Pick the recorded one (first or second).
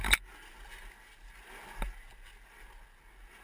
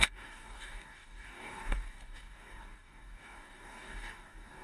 first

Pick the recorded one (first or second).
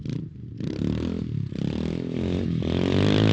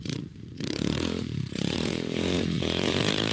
first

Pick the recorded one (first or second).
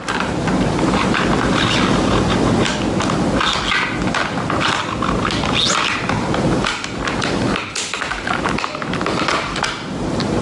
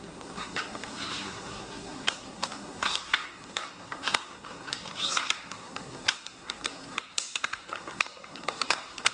first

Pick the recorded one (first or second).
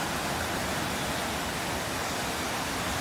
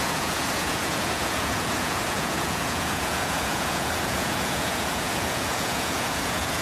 first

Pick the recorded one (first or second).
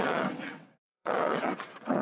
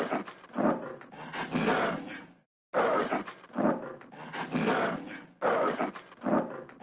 second